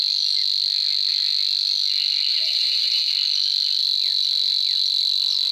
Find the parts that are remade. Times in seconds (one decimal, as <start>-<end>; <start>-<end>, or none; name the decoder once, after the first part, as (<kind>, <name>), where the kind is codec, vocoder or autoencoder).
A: 2.3-3.1 (vocoder, BigVGAN v2)